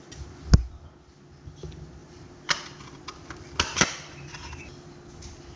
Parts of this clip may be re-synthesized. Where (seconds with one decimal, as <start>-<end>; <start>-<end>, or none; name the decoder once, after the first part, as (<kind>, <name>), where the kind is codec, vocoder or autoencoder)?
none

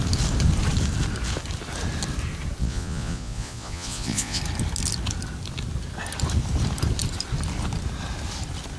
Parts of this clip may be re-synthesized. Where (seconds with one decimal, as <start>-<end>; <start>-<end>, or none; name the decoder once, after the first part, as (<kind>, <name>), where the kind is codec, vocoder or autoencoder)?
2.6-4.4 (vocoder, Vocos)

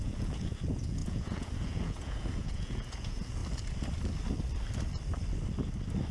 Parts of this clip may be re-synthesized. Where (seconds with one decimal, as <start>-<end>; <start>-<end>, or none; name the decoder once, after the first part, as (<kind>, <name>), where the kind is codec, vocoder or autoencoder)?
0.0-3.4 (vocoder, Vocos)